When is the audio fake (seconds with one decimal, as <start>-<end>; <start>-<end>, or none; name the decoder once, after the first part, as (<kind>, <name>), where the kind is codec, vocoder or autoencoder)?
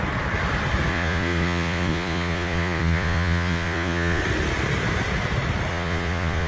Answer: 0.9-4.2 (vocoder, Vocos); 5.7-6.5